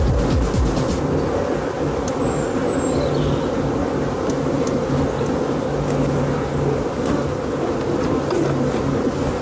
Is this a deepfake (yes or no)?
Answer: no